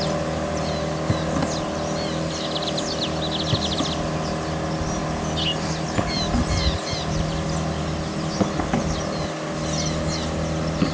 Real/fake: real